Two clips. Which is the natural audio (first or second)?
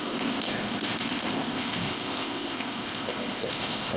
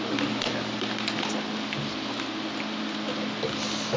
second